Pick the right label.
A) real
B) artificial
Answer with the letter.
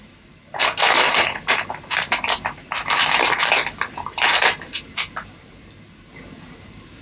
B